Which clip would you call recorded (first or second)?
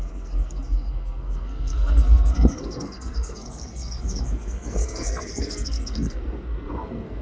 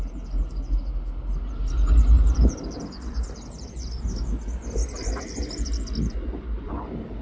second